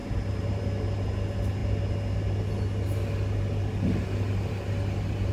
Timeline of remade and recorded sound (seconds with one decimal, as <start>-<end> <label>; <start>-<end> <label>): 0.0-5.3 recorded